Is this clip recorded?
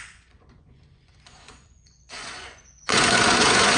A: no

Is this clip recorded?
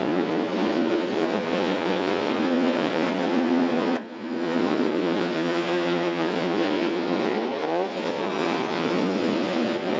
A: no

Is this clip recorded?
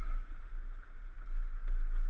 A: yes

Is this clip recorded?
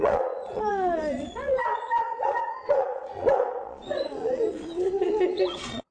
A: no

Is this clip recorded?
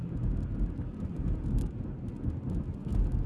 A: yes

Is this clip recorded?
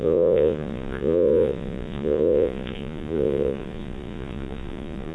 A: no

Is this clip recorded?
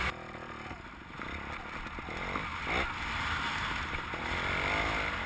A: yes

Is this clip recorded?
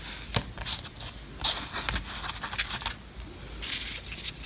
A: yes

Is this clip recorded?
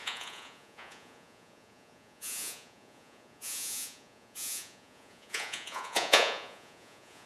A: no